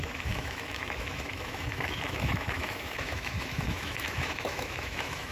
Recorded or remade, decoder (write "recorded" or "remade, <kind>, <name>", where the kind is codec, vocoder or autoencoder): remade, autoencoder, DAC-VAE